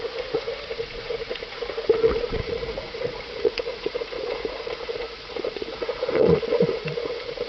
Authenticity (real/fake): fake